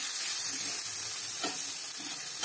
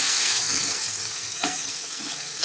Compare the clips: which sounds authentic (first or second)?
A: first